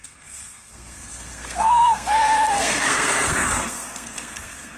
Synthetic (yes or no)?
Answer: yes